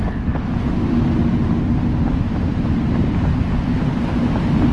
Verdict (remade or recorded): recorded